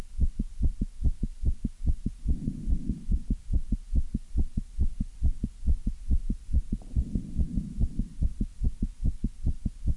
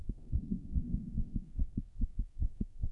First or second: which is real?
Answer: first